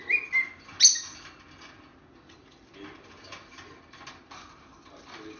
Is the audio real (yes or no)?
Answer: yes